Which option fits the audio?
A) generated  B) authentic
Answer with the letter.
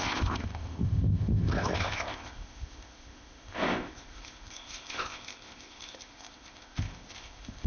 A